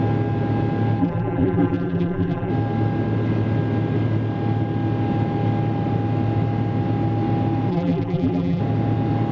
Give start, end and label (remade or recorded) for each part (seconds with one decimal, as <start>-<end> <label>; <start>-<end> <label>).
0.0-1.0 recorded; 1.0-2.5 remade; 2.5-7.7 recorded; 7.7-8.6 remade; 8.6-9.3 recorded